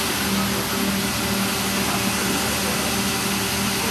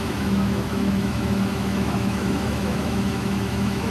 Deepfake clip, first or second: second